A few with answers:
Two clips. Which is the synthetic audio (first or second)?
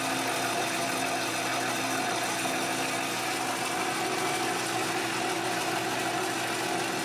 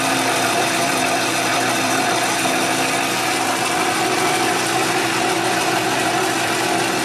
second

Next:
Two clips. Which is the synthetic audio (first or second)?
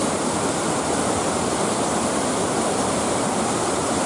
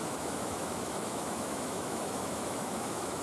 second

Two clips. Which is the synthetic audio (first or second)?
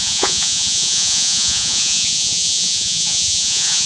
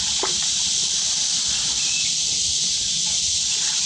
first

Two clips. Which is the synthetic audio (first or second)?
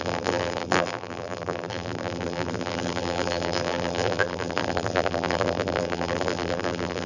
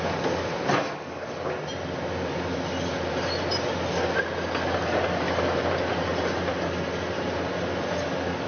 first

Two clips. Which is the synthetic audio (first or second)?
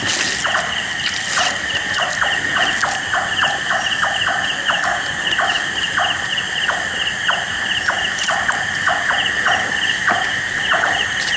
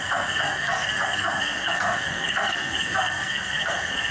second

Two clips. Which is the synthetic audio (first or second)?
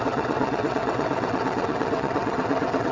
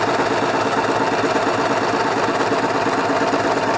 first